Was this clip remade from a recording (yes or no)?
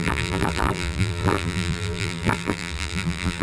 yes